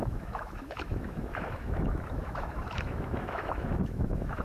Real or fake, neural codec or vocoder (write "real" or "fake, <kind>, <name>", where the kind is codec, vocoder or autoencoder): fake, autoencoder, DAC-VAE